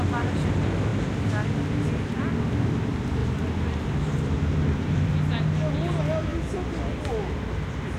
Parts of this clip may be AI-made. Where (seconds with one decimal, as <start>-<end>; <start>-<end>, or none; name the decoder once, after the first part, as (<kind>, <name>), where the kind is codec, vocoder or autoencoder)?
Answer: 3.2-5.1 (vocoder, BigVGAN v2)